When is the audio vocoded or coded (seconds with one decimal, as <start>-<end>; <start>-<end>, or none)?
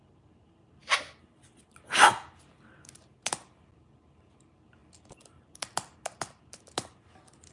none